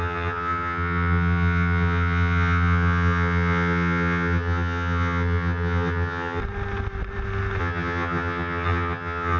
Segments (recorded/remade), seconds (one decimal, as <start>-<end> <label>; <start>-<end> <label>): 0.0-6.4 remade; 6.4-7.6 recorded; 7.6-9.4 remade